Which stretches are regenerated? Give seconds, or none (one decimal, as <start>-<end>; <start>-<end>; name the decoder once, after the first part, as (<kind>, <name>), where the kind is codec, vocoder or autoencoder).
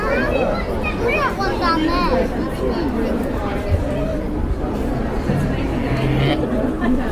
2.1-5.7 (vocoder, BigVGAN v2)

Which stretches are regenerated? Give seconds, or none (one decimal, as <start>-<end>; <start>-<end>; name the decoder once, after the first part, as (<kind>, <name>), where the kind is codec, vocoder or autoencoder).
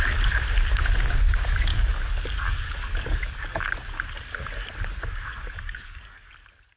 1.7-3.7 (codec, DAC); 5.3-6.3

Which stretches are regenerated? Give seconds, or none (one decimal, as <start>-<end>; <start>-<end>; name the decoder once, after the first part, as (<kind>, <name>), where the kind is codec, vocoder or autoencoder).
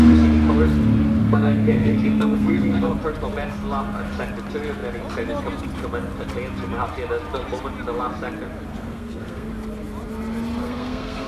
1.2-2.9 (codec, SNAC); 8.7-9.5; 10.6-11.3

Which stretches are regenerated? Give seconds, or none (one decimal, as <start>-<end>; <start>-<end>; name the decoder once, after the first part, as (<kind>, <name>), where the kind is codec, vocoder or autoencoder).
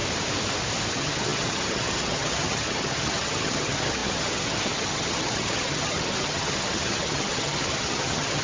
0.9-8.4 (vocoder, HiFi-GAN)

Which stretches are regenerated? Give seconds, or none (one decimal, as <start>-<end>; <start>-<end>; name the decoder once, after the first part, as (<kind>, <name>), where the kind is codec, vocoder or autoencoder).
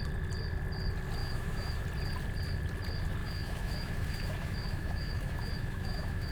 1.2-1.8 (autoencoder, DAC-VAE); 3.2-6.3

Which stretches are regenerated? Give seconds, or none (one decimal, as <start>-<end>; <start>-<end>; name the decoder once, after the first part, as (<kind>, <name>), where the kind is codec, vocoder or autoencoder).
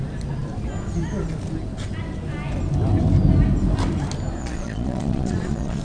4.4-5.8 (vocoder, Vocos)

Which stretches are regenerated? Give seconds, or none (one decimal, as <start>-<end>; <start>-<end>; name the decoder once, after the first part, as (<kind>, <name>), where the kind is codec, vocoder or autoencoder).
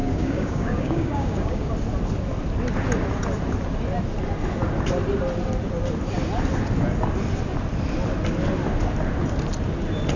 0.0-1.7 (codec, DAC)